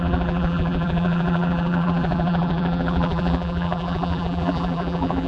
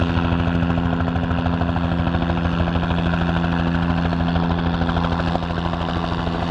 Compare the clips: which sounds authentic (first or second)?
second